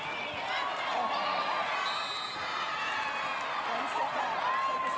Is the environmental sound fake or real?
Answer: real